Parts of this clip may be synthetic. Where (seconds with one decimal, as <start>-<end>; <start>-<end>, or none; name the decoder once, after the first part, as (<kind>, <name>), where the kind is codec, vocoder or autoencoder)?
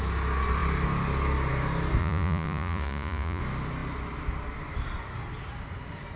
2.0-3.4 (vocoder, Vocos)